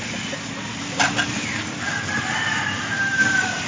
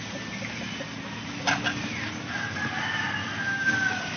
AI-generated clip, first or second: first